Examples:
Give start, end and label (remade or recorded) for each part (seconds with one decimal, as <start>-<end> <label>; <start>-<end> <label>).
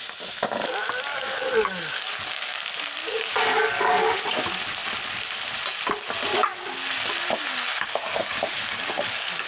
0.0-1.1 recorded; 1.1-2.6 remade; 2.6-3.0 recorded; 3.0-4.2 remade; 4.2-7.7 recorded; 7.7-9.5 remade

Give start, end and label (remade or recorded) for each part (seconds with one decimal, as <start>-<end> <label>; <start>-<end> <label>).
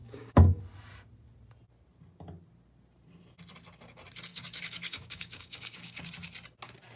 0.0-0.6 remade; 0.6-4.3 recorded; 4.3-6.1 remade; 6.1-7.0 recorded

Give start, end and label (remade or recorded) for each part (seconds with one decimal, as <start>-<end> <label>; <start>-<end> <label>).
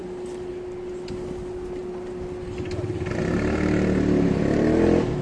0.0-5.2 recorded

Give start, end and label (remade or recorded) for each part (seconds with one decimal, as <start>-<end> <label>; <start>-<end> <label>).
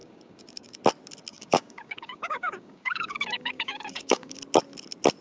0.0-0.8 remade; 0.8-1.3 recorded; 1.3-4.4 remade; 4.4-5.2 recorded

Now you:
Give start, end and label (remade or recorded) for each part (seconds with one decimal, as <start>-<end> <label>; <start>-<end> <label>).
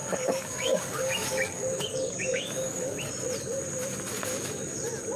0.0-3.1 remade; 3.1-5.2 recorded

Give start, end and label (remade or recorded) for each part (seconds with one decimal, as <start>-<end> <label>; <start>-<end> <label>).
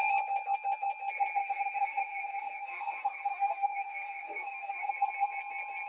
0.0-1.4 recorded; 1.4-4.9 remade; 4.9-5.9 recorded